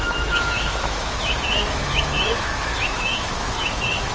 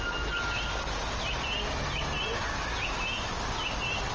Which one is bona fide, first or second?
second